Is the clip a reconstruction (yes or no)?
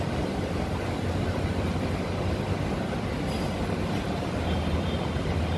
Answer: no